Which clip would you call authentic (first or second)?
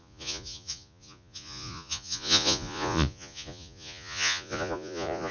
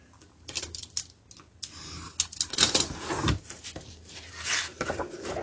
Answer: second